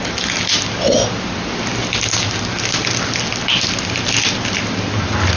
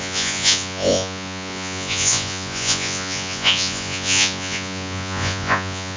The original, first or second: first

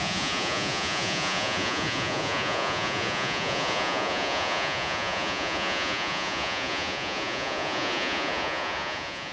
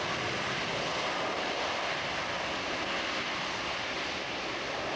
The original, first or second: second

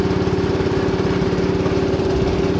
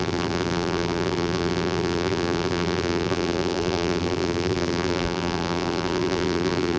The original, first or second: first